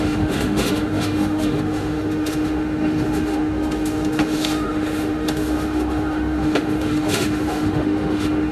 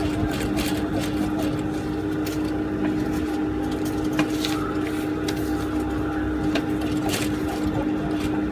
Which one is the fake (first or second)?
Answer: first